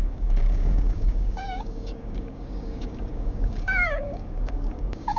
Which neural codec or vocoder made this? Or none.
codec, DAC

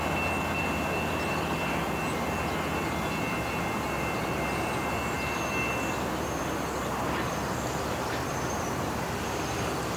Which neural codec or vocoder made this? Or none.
none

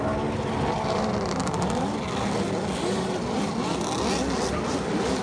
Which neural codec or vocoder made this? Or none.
none